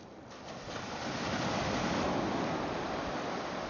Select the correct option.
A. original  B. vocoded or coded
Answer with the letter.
A